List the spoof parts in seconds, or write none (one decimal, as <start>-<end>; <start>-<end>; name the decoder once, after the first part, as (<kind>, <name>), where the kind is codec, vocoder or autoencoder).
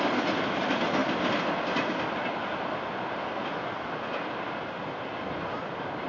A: none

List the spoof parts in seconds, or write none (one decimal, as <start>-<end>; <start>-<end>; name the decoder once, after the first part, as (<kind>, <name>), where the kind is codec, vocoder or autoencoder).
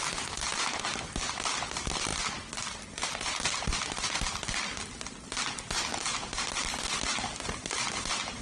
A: none